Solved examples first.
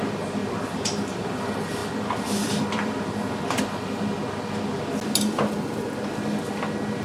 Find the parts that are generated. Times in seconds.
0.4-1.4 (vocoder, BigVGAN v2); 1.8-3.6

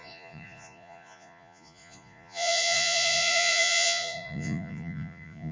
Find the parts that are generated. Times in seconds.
0.0-5.5 (vocoder, Vocos)

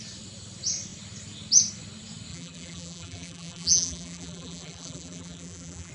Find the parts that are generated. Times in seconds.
2.3-5.9 (vocoder, BigVGAN v2)

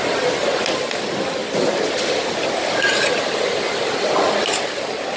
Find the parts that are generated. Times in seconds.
none